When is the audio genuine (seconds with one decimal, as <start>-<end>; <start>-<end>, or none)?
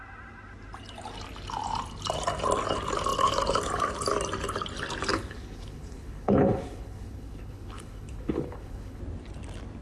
0.0-5.1; 9.0-9.8